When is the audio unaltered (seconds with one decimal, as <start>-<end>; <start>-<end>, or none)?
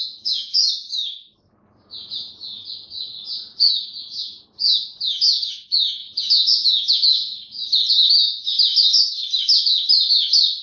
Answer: 0.5-1.8; 8.7-10.6